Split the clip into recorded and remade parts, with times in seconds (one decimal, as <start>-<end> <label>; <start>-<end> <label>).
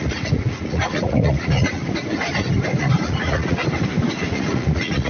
0.0-1.8 remade; 1.8-2.8 recorded; 2.8-3.6 remade; 3.6-4.3 recorded; 4.3-5.1 remade